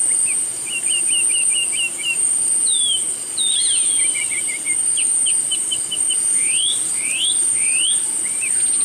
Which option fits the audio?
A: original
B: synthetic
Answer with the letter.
B